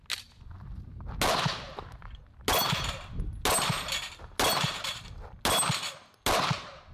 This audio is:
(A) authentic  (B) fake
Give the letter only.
A